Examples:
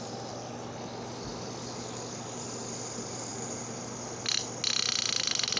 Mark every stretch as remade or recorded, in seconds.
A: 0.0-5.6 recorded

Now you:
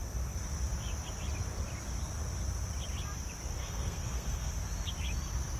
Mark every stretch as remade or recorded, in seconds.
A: 0.0-3.6 recorded; 3.6-4.5 remade; 4.5-5.6 recorded

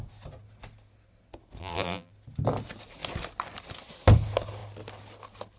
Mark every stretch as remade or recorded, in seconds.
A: 0.0-1.6 recorded; 1.6-2.1 remade; 2.1-5.6 recorded

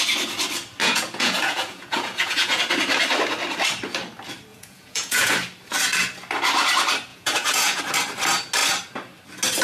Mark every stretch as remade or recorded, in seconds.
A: 0.0-0.8 recorded; 0.8-2.7 remade; 2.7-4.5 recorded; 4.5-5.3 remade; 5.3-7.1 recorded; 7.1-7.8 remade; 7.8-9.6 recorded

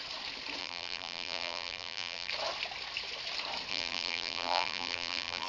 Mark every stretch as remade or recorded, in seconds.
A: 0.0-0.6 recorded; 0.6-2.3 remade; 2.3-3.7 recorded; 3.7-5.5 remade

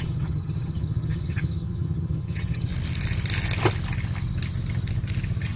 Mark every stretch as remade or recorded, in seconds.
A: 0.0-2.7 remade; 2.7-5.6 recorded

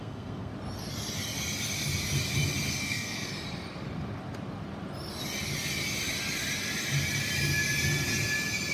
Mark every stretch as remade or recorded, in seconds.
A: 0.0-0.5 remade; 0.5-2.7 recorded; 2.7-3.3 remade; 3.3-8.7 recorded

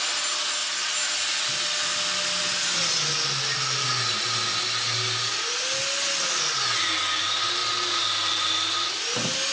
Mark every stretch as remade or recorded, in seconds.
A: 0.0-9.5 recorded